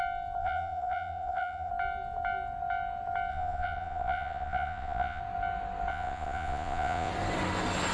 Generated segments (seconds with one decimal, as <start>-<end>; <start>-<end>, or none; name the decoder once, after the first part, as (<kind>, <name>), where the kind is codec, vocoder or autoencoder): 0.4-1.7 (vocoder, Vocos); 3.3-5.2; 5.9-7.1